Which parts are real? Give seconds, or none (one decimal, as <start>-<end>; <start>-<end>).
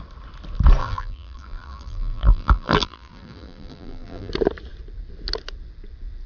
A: 0.0-0.8; 4.3-6.3